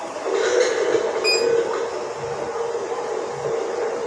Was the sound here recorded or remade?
recorded